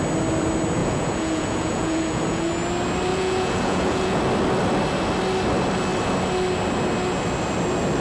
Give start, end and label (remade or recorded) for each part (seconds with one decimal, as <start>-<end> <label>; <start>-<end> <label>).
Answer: 0.0-0.8 recorded; 0.8-2.5 remade; 2.5-3.1 recorded; 3.1-4.2 remade; 4.2-8.0 recorded